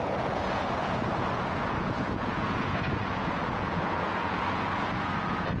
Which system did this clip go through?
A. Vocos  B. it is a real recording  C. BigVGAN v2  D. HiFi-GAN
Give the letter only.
A